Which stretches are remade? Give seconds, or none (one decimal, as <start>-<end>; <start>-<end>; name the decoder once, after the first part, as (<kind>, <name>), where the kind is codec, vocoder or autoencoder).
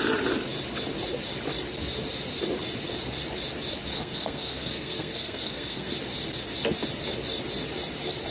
3.9-5.9 (codec, SNAC)